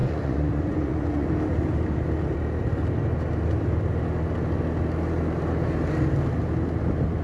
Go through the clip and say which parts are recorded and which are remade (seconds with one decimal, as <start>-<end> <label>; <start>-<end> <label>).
0.0-1.3 remade; 1.3-7.2 recorded